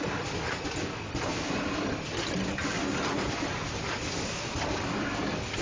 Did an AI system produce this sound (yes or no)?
yes